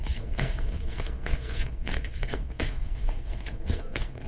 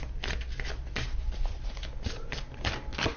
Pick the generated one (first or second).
first